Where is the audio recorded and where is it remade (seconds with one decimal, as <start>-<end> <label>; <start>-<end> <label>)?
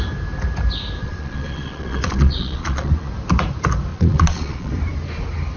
0.0-1.0 recorded; 1.0-3.1 remade; 3.1-3.9 recorded; 3.9-4.7 remade; 4.7-5.6 recorded